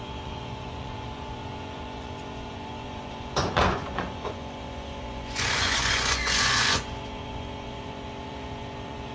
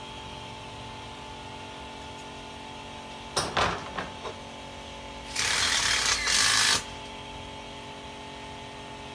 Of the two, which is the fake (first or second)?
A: first